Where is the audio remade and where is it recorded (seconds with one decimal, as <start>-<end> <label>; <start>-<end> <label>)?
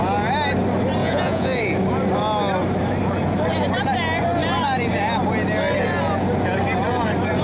0.0-1.0 recorded; 1.0-1.6 remade; 1.6-7.4 recorded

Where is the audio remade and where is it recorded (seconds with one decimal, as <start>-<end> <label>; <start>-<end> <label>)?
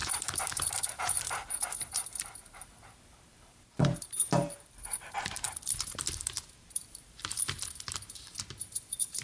0.0-9.2 remade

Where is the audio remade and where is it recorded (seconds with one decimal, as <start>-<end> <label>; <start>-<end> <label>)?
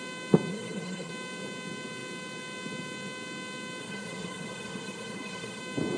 0.0-0.5 recorded; 0.5-1.1 remade; 1.1-3.8 recorded; 3.8-5.6 remade; 5.6-6.0 recorded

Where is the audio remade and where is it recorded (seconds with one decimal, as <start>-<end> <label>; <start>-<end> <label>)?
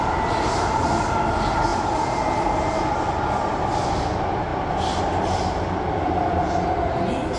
0.0-7.4 recorded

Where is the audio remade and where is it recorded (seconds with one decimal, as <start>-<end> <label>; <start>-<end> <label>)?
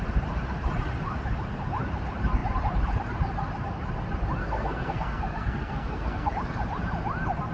0.0-4.4 recorded; 4.4-6.3 remade; 6.3-7.5 recorded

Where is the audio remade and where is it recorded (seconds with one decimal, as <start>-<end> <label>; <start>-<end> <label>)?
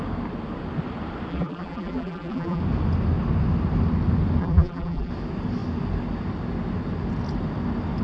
0.0-1.3 recorded; 1.3-2.6 remade; 2.6-4.4 recorded; 4.4-5.1 remade; 5.1-8.0 recorded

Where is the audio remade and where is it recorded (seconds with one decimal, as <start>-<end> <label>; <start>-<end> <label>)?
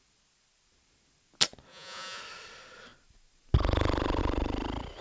0.0-1.7 recorded; 1.7-2.2 remade; 2.2-5.0 recorded